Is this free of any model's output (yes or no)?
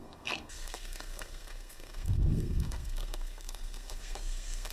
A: no